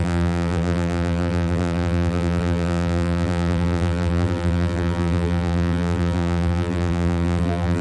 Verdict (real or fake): fake